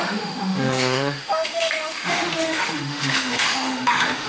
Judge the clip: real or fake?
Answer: fake